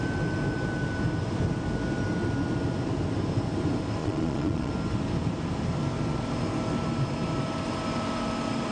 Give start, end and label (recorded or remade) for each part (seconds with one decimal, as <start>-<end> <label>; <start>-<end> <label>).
0.0-4.0 recorded; 4.0-4.7 remade; 4.7-8.7 recorded